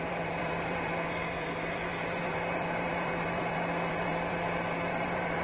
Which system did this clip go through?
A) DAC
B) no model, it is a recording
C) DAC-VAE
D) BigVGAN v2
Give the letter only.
D